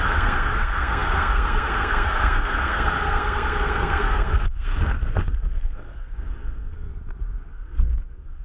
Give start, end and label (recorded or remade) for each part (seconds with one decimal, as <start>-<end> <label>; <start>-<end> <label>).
0.0-6.9 remade; 6.9-7.5 recorded; 7.5-8.4 remade